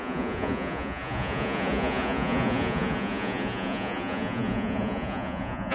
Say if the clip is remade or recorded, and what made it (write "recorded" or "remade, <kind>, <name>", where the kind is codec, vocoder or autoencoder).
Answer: remade, vocoder, Vocos